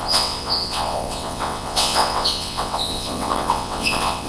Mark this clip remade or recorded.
remade